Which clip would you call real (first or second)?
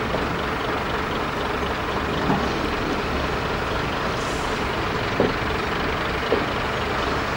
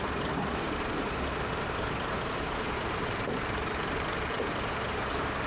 first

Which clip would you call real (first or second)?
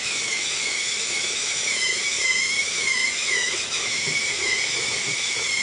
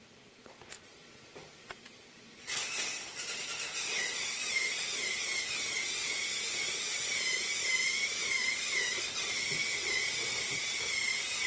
second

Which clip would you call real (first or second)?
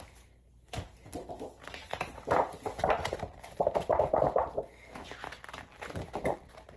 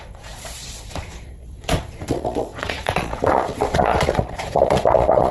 first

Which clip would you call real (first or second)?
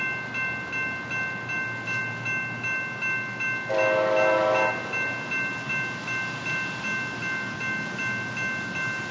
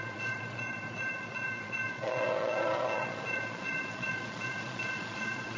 first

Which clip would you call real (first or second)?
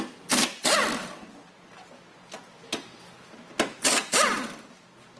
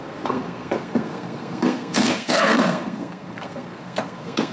first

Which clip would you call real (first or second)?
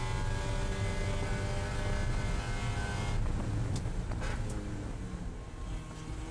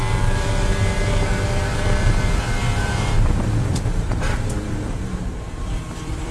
first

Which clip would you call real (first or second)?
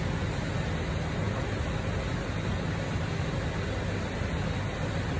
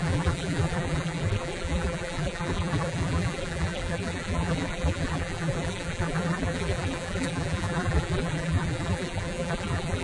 first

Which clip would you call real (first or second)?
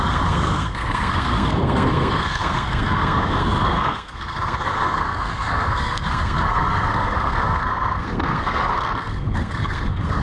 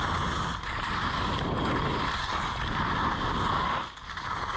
second